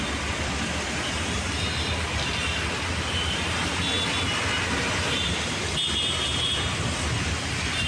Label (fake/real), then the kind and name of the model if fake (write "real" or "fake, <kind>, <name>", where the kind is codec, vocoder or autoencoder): real